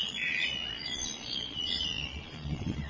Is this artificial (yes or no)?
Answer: yes